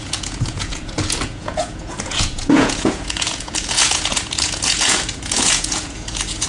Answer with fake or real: fake